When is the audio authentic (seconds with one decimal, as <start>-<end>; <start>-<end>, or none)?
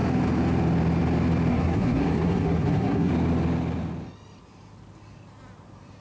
0.0-1.5; 3.1-6.0